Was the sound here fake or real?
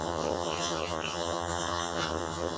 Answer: fake